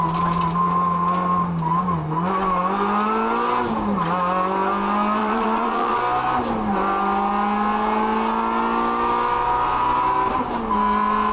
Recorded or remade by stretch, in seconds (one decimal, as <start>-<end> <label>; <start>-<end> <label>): 0.0-5.2 recorded; 5.2-6.0 remade; 6.0-11.3 recorded

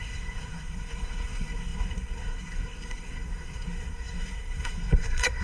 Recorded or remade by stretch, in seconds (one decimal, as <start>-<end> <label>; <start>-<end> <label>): 0.0-5.4 remade